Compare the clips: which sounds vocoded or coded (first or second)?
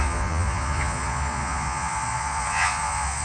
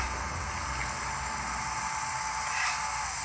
first